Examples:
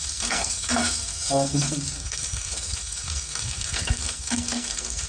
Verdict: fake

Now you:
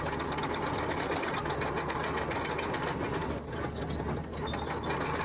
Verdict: real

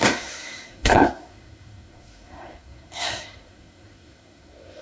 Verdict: fake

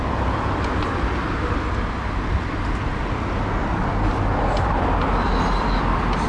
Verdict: real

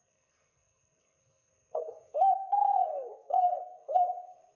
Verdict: fake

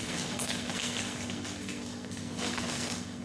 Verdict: fake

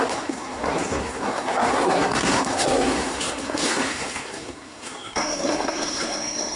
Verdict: fake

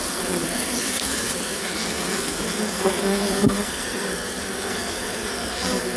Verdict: fake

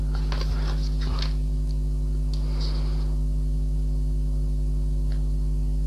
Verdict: real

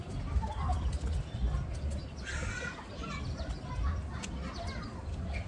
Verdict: real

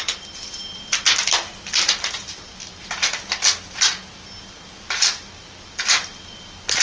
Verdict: real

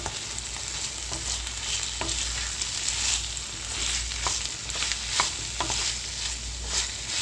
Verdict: real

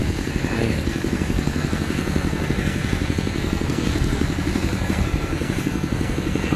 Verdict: fake